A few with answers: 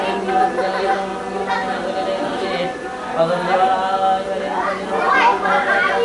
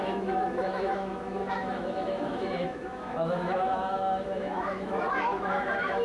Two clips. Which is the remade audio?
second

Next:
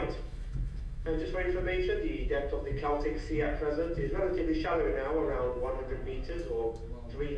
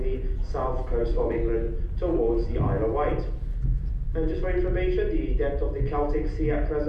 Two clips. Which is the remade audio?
first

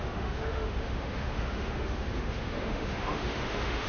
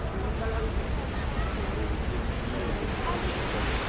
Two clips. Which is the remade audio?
first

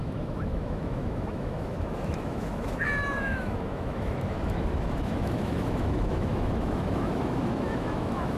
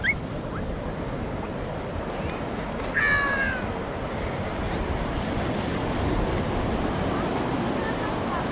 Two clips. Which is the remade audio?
first